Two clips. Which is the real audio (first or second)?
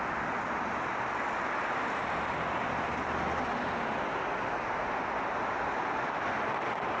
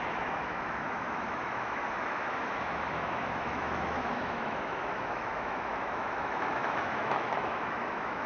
first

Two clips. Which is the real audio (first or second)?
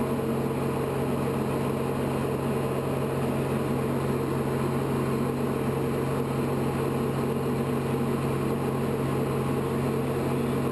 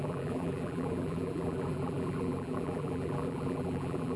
first